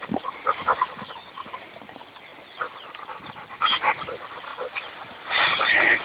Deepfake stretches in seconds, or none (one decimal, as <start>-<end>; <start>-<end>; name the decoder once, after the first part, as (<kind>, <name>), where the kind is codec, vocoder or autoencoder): 0.0-0.6 (vocoder, BigVGAN v2); 1.3-2.3; 3.2-6.0